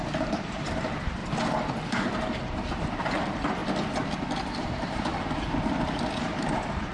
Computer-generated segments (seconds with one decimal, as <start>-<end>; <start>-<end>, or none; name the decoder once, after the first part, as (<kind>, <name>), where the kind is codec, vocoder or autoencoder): 0.0-1.2 (vocoder, BigVGAN v2); 1.9-3.6; 4.6-5.1; 6.2-6.9